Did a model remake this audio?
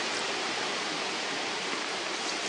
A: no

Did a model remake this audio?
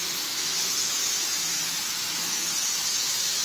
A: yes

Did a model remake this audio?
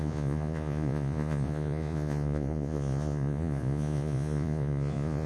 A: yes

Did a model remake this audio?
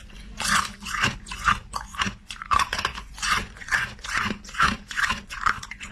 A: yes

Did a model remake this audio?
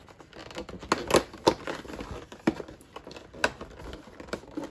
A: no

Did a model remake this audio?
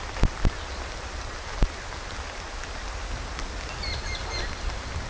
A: no